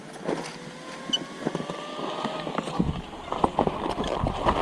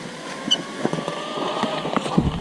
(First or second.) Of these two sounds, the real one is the first